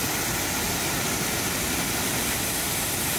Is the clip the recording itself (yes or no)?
yes